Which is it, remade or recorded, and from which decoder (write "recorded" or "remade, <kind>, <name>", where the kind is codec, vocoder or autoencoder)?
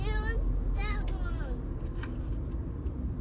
recorded